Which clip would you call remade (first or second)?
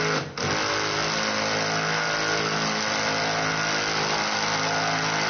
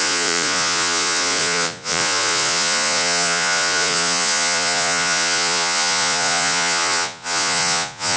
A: second